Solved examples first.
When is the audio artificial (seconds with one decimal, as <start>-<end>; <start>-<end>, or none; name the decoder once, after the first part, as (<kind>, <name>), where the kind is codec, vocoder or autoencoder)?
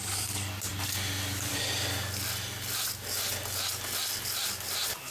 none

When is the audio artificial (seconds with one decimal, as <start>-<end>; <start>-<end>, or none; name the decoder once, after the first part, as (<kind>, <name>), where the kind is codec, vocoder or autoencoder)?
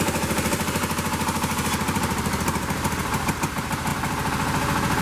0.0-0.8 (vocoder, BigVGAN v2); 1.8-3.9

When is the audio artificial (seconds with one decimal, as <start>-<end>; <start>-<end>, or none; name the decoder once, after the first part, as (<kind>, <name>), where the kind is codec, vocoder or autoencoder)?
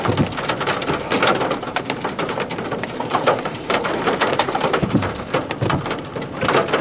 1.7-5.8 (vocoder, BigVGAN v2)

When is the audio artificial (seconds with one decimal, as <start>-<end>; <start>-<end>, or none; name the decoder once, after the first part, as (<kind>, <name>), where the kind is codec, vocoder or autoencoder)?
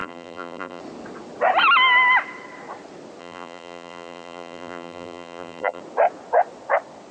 0.0-0.8 (vocoder, BigVGAN v2); 3.2-5.8